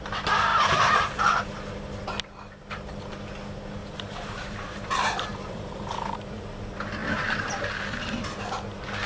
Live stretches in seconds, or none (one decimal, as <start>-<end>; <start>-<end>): 0.0-0.5; 1.4-3.8; 6.6-7.0; 7.6-9.1